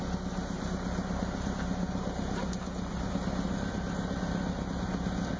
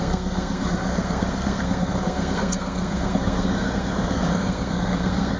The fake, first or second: second